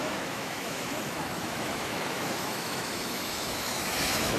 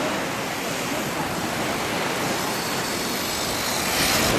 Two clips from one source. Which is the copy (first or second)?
first